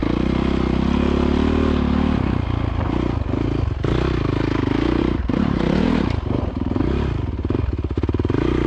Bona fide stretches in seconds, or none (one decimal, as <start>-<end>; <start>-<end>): 0.0-5.0; 6.8-8.0